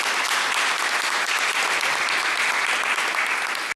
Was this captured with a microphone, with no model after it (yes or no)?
yes